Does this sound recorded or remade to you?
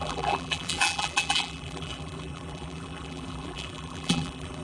remade